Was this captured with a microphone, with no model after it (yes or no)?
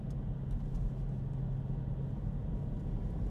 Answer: yes